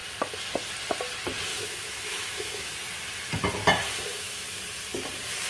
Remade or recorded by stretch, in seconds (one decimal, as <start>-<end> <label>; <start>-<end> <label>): 0.0-1.5 recorded; 1.5-2.7 remade; 2.7-4.1 recorded; 4.1-4.6 remade; 4.6-5.5 recorded